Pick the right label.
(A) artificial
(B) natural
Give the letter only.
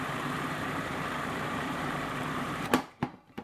A